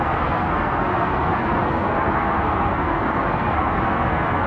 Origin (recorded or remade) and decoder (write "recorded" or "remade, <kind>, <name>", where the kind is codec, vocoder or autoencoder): remade, codec, SNAC